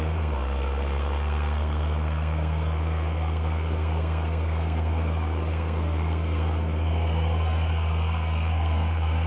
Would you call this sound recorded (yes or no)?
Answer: no